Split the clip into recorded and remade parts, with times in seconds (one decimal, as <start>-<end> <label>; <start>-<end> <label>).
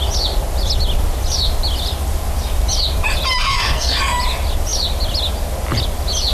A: 0.0-3.5 recorded; 3.5-4.0 remade; 4.0-6.3 recorded